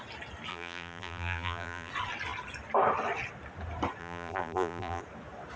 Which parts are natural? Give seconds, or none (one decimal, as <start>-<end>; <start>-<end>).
0.0-0.5; 1.9-4.0; 5.0-5.6